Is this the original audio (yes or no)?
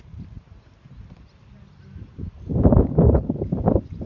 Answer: yes